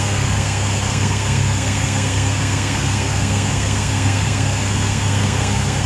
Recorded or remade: remade